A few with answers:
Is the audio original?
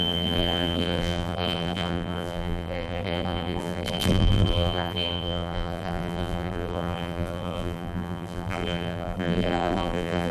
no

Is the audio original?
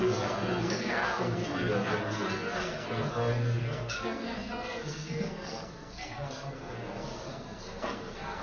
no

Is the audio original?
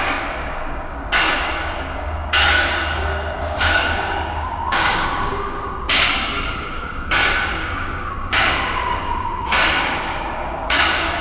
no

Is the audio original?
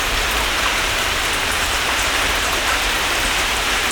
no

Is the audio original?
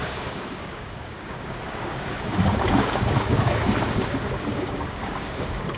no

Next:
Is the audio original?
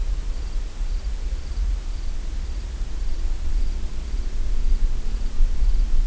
yes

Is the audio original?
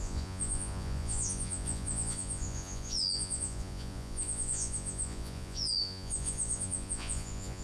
no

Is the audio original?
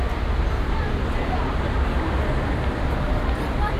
yes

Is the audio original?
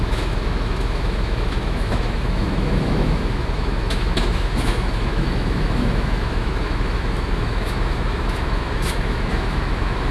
no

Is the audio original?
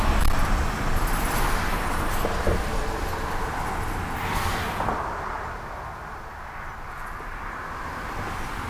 yes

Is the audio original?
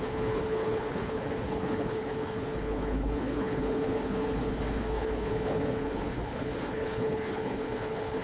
no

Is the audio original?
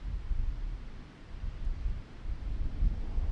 yes